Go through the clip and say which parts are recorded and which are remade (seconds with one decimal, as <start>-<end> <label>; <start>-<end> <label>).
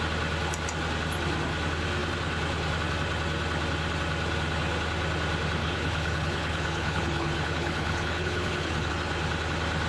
0.0-5.6 recorded; 5.6-8.9 remade; 8.9-9.9 recorded